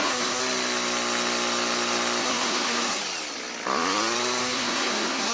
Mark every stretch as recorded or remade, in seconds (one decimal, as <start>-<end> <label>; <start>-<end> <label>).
0.0-0.4 remade; 0.4-2.2 recorded; 2.2-3.0 remade; 3.0-4.4 recorded; 4.4-5.3 remade